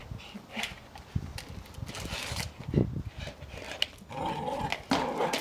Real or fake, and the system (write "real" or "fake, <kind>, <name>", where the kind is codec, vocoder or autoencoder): real